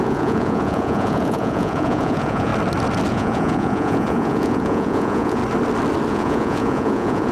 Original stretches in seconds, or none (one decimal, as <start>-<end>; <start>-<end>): 2.5-3.1; 5.4-6.1